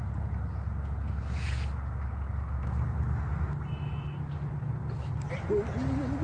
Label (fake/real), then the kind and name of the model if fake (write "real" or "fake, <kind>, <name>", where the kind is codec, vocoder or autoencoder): real